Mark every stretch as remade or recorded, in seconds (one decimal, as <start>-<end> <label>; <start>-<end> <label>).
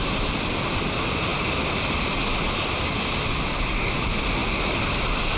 0.0-5.4 recorded